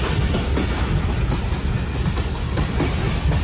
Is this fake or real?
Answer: real